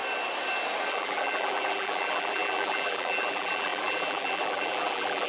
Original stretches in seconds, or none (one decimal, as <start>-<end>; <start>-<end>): 0.0-0.9